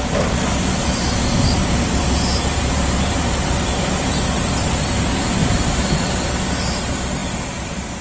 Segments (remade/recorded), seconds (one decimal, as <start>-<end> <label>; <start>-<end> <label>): 0.0-1.6 recorded; 1.6-4.1 remade; 4.1-5.4 recorded; 5.4-5.9 remade; 5.9-8.0 recorded

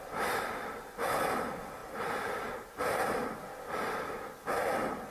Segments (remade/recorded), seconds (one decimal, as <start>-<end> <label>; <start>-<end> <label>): 0.0-5.1 recorded

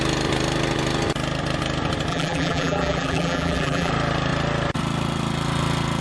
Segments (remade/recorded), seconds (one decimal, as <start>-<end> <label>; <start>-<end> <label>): 0.0-2.1 recorded; 2.1-3.9 remade; 3.9-6.0 recorded

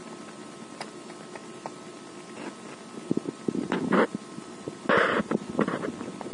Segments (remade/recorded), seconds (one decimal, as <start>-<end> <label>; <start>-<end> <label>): 0.0-6.3 recorded

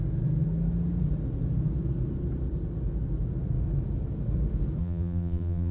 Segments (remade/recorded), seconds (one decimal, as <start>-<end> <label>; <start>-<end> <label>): 0.0-4.8 recorded; 4.8-5.7 remade